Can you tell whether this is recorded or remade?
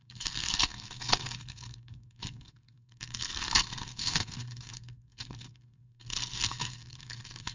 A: remade